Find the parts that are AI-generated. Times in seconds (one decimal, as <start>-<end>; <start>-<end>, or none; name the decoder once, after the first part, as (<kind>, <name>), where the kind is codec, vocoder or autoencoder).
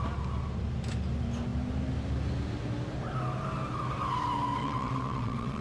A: 4.6-5.6 (vocoder, WaveNeXt)